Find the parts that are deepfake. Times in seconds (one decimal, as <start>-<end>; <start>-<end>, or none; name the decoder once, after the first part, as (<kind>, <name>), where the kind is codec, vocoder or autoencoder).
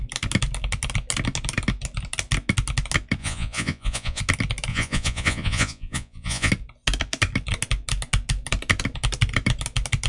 3.2-4.2 (vocoder, Vocos); 4.7-6.5